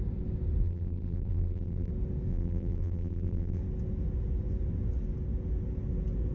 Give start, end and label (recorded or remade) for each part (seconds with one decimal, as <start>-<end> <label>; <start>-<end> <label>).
0.0-0.6 recorded; 0.6-1.9 remade; 1.9-2.3 recorded; 2.3-3.6 remade; 3.6-6.3 recorded